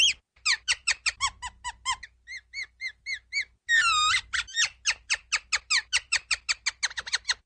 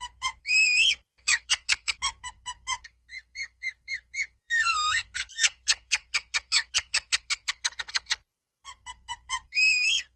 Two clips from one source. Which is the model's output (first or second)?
second